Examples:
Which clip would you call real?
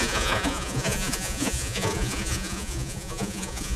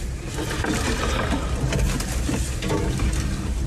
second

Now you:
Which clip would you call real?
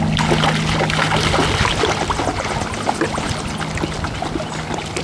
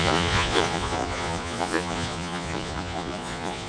first